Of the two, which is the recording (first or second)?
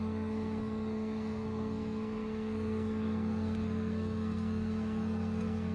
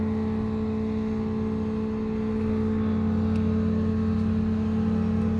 second